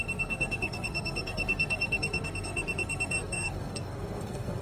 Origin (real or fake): fake